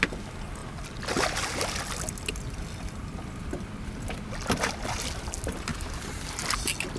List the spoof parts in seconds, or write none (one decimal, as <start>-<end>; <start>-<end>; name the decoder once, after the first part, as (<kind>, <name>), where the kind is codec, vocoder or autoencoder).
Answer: none